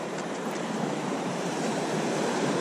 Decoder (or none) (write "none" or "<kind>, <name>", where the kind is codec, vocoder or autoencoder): vocoder, BigVGAN v2